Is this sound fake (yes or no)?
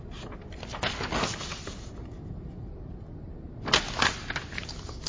no